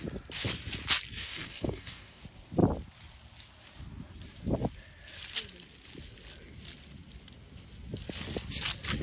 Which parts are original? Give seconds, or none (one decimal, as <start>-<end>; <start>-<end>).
0.0-1.1; 2.2-9.0